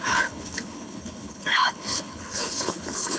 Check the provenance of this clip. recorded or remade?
remade